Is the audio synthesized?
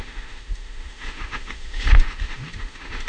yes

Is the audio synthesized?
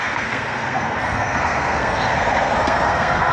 yes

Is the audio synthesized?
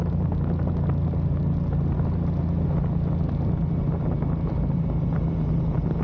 no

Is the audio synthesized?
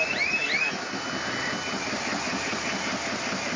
no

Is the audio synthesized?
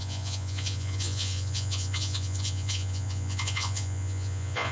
yes